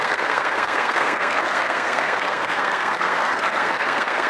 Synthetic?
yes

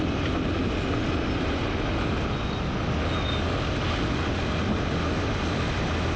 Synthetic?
no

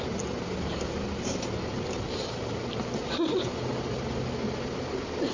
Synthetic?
no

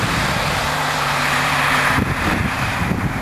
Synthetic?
yes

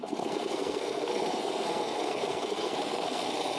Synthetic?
yes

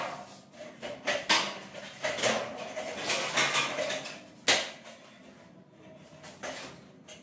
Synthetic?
no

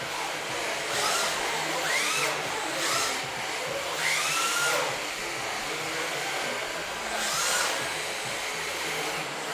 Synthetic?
no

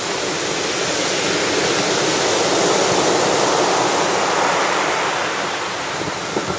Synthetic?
no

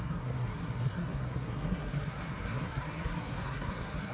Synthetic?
yes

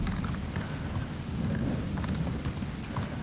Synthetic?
no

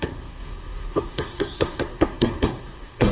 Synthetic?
yes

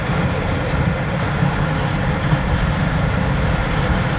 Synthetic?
no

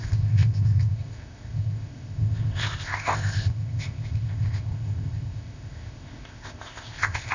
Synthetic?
yes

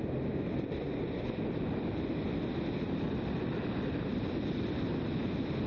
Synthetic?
no